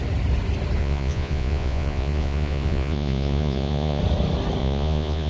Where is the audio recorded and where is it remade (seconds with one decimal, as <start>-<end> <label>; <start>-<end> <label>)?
0.0-0.8 recorded; 0.8-4.0 remade; 4.0-4.6 recorded; 4.6-5.3 remade